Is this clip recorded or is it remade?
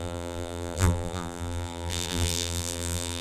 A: remade